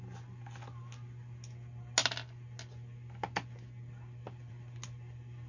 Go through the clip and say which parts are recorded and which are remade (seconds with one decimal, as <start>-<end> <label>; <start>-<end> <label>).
0.0-5.5 recorded